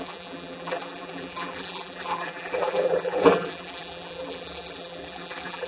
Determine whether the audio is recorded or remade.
remade